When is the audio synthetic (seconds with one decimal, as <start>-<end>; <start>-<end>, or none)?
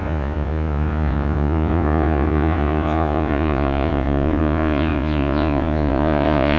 0.0-6.6